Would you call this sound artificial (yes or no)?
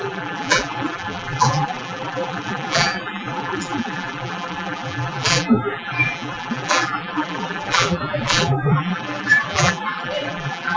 yes